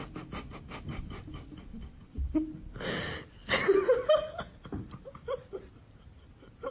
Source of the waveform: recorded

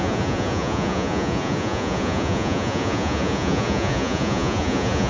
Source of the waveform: remade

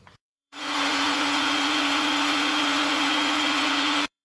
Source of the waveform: remade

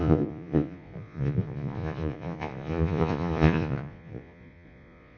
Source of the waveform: remade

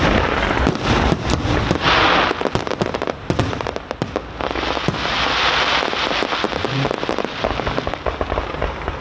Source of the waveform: recorded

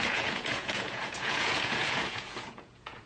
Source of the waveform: remade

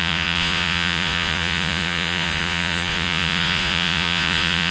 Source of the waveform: remade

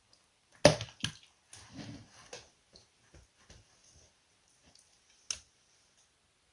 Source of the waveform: recorded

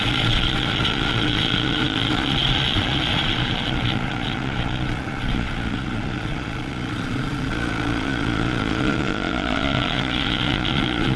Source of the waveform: remade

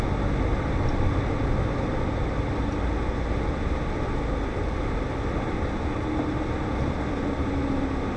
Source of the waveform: recorded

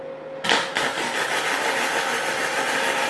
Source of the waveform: recorded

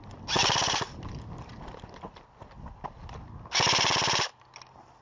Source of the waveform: recorded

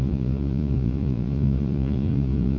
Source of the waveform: remade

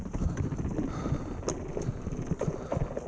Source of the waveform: recorded